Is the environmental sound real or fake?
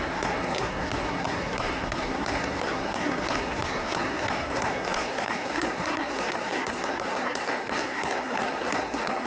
fake